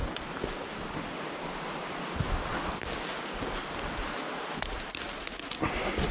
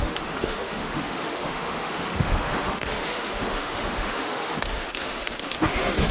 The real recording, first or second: first